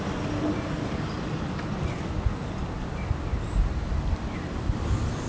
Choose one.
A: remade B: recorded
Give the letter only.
B